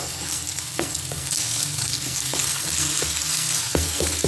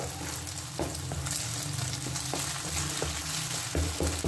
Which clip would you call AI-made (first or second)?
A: first